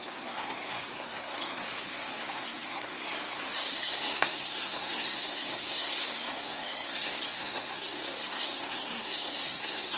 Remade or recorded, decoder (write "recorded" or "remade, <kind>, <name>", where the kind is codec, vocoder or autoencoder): remade, codec, SNAC